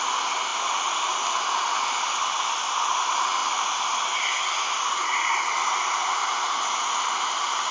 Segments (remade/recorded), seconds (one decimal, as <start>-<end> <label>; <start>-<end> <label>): 0.0-7.7 recorded